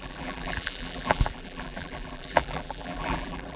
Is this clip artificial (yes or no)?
yes